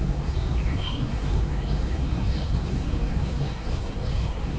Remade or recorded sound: remade